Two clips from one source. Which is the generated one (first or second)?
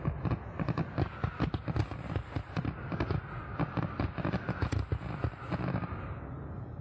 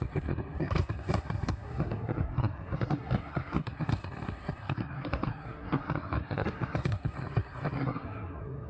second